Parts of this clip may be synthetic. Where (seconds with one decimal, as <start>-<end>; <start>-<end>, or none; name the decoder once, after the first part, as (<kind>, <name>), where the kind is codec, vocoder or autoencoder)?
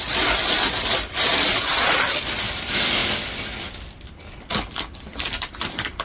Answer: none